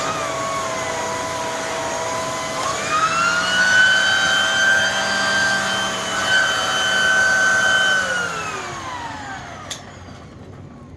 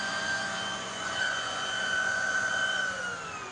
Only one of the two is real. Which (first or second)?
first